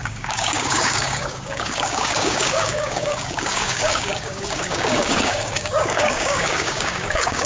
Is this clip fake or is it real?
fake